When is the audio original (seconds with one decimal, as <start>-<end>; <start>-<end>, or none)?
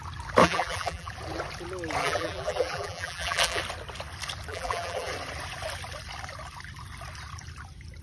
0.0-0.4; 1.1-2.0; 3.6-4.5; 5.1-8.0